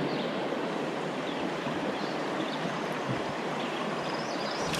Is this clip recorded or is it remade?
remade